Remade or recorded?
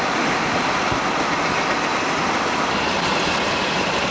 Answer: recorded